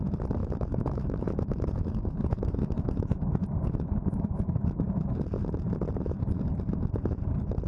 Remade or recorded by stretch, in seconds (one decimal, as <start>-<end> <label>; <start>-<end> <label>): 0.0-0.4 recorded; 0.4-5.0 remade; 5.0-7.7 recorded

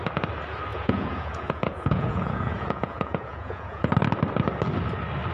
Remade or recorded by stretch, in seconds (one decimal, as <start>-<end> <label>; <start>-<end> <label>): 0.0-0.7 recorded; 0.7-3.9 remade; 3.9-5.3 recorded

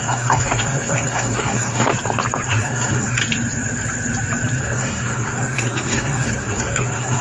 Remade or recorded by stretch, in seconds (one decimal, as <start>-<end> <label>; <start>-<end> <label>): 0.0-1.9 remade; 1.9-2.5 recorded; 2.5-3.2 remade; 3.2-4.6 recorded; 4.6-7.2 remade